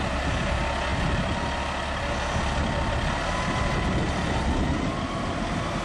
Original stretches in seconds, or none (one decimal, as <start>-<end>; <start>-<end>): 0.0-5.8